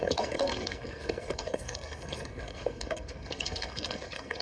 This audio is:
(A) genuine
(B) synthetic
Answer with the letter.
B